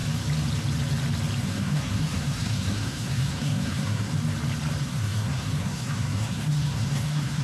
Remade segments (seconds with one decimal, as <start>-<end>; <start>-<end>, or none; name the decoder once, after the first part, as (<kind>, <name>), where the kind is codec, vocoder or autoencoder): 1.4-4.1 (codec, SNAC); 4.8-7.4

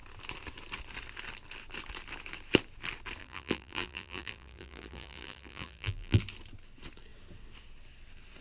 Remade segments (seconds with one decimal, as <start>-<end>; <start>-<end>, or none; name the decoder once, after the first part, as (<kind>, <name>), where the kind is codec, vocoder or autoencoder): 3.2-6.2 (vocoder, BigVGAN v2)

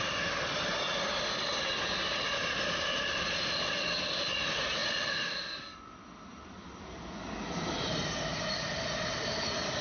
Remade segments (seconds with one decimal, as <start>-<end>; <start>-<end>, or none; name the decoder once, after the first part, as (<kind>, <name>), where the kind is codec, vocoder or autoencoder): none

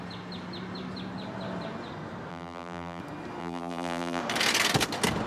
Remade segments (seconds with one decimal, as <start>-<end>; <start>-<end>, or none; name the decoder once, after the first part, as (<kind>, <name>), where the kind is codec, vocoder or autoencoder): 2.3-3.0 (vocoder, BigVGAN v2); 3.4-4.2

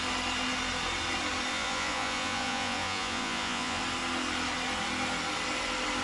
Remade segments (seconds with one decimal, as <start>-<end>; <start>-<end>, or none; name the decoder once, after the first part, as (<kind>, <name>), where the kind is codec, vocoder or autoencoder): 1.5-3.8 (vocoder, Vocos)

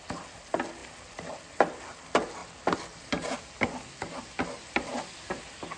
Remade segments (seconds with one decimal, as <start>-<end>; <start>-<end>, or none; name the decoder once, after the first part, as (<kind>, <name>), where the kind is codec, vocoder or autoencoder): none

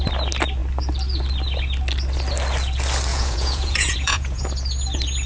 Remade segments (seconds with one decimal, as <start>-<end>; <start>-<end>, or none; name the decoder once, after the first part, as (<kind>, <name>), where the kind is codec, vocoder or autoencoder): 3.1-4.4 (vocoder, Vocos)

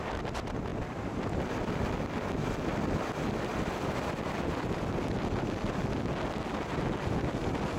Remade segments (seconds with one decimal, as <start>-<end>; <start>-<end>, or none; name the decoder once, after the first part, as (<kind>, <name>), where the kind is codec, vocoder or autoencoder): none